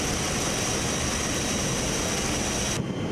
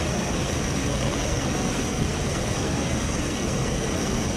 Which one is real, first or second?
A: first